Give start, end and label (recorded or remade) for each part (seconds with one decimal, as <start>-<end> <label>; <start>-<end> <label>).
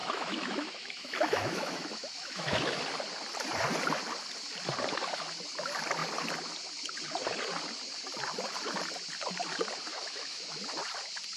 0.0-2.8 remade; 2.8-9.9 recorded; 9.9-10.6 remade; 10.6-11.4 recorded